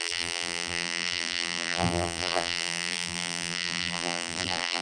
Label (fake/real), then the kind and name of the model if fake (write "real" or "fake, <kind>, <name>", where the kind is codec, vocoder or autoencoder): fake, vocoder, BigVGAN v2